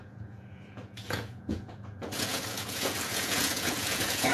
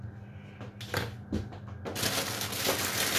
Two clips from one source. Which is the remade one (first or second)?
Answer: first